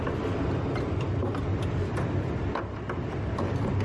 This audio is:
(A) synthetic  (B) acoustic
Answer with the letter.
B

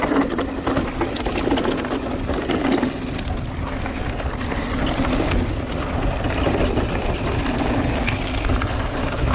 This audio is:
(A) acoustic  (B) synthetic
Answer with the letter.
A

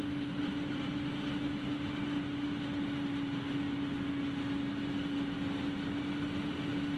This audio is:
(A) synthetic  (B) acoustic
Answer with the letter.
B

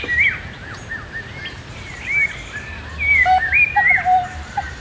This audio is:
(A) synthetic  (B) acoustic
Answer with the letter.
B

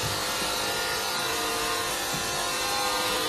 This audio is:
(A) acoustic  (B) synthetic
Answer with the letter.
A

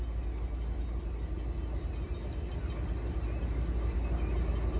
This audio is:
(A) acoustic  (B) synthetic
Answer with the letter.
A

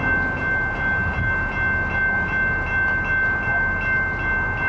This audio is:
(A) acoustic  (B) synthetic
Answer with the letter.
A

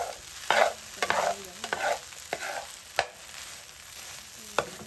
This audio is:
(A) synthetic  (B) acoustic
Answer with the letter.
B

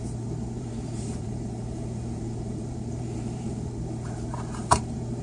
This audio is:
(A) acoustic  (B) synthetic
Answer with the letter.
B